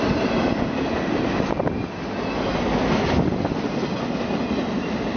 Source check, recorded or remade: recorded